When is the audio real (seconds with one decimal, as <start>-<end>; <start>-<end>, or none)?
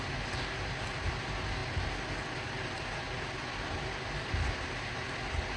0.0-5.6